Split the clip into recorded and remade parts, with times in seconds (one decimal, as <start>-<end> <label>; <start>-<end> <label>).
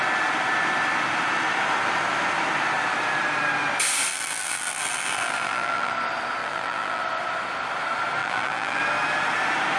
0.0-4.1 recorded; 4.1-5.9 remade; 5.9-6.4 recorded; 6.4-7.0 remade; 7.0-8.2 recorded; 8.2-8.8 remade; 8.8-9.8 recorded